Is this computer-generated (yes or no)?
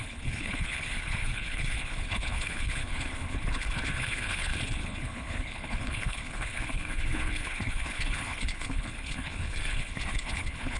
yes